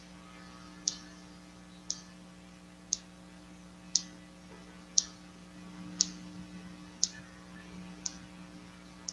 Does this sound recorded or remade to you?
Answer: recorded